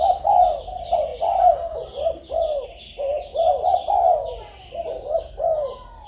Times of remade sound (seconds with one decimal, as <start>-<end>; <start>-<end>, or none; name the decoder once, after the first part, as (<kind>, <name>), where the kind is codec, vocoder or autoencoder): none